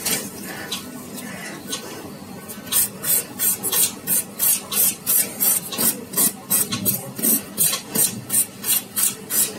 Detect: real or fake real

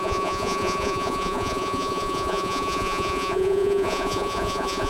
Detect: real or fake fake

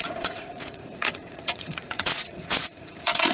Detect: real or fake fake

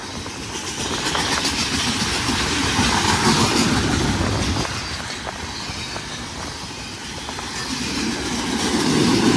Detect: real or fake real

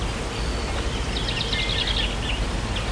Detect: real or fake real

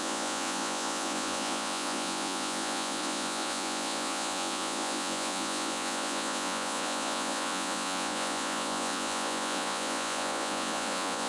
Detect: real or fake fake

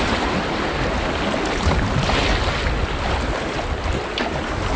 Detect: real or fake real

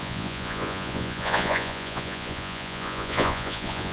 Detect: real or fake fake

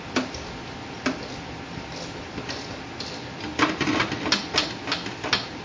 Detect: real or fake real